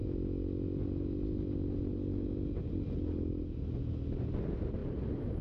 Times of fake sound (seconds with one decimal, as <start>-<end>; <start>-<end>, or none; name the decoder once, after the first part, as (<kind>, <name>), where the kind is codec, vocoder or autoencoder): 4.8-5.4 (vocoder, BigVGAN v2)